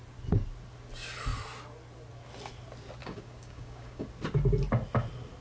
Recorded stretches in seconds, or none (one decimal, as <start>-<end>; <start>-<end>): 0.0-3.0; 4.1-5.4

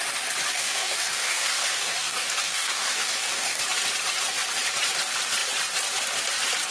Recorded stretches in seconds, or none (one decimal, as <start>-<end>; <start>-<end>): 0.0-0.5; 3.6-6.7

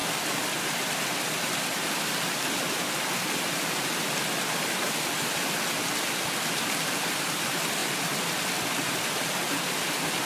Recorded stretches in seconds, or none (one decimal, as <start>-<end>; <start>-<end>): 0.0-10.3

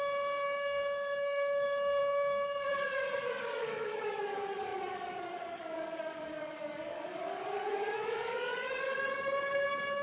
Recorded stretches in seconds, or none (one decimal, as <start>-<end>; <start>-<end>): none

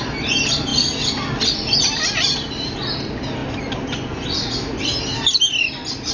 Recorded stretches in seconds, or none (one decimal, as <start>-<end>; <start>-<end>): 0.0-6.1